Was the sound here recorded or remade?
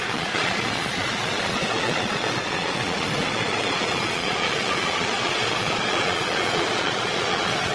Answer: remade